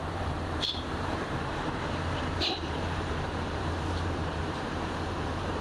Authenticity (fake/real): fake